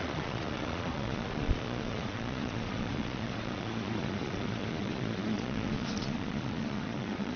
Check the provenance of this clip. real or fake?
fake